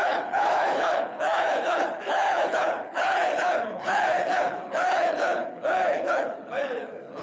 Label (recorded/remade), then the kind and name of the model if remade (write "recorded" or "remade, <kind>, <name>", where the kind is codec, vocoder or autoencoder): remade, codec, HILCodec